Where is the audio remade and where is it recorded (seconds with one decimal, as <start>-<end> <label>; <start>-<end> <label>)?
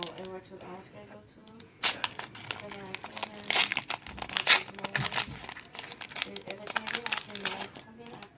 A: 0.0-1.4 recorded; 1.4-2.0 remade; 2.0-8.4 recorded